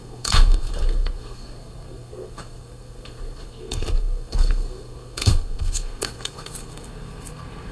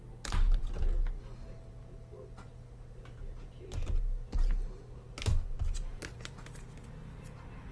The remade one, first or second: first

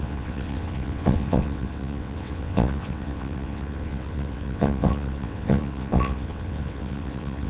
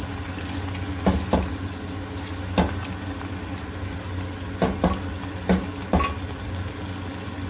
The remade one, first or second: first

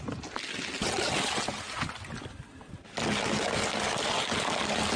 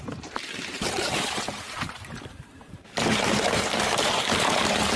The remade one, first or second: second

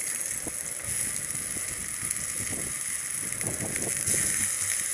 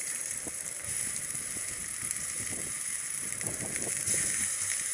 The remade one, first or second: second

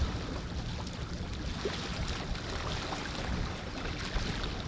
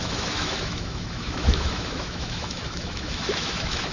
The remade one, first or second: second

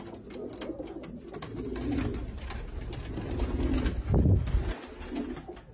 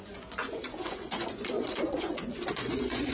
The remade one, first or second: second